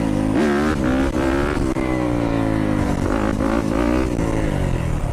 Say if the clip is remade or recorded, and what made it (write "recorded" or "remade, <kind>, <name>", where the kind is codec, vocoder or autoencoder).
recorded